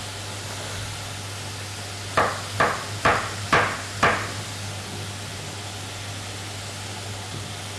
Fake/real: real